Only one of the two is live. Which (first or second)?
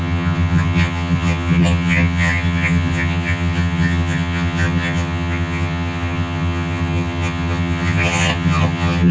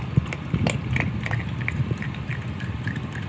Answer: second